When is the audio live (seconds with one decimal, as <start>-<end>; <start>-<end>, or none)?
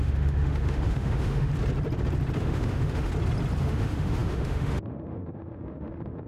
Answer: 1.5-2.4; 3.1-3.6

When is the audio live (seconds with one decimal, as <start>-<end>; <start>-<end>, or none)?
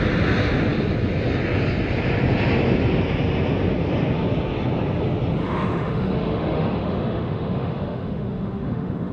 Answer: 0.0-5.4